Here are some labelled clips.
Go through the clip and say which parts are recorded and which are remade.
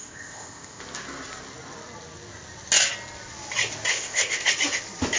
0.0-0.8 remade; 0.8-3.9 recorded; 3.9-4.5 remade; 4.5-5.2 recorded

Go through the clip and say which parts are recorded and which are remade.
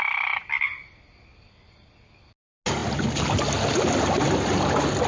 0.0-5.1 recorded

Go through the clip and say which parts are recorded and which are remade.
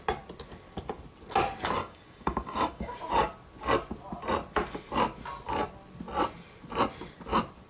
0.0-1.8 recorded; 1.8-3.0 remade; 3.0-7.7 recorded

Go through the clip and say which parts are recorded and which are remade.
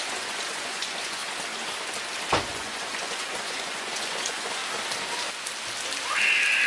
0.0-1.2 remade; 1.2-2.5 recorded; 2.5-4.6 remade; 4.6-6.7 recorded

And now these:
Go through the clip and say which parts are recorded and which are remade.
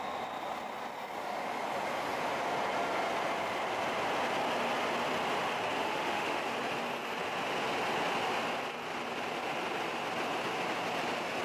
0.0-5.8 recorded; 5.8-6.4 remade; 6.4-11.4 recorded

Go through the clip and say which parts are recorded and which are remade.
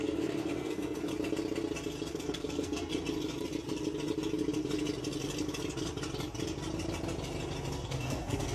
0.0-1.1 remade; 1.1-2.1 recorded; 2.1-2.9 remade; 2.9-7.7 recorded; 7.7-8.5 remade